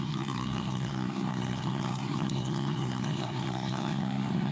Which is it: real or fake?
fake